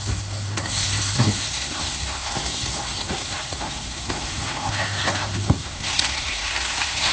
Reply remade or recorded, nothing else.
remade